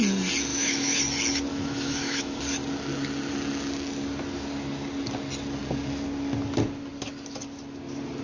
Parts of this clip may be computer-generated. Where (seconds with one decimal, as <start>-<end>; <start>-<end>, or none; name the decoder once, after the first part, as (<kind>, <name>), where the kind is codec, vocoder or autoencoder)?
0.5-1.0 (autoencoder, DAC-VAE); 1.5-2.4